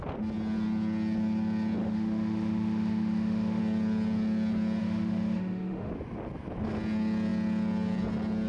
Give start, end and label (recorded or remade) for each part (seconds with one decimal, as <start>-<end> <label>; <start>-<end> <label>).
0.0-1.8 recorded; 1.8-3.6 remade; 3.6-4.8 recorded; 4.8-5.9 remade; 5.9-8.5 recorded